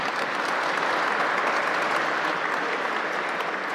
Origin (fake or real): real